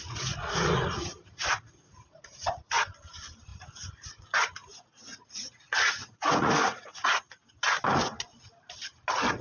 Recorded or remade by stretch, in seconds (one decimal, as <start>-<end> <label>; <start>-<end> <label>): 0.0-2.7 remade; 2.7-3.5 recorded; 3.5-7.4 remade; 7.4-9.4 recorded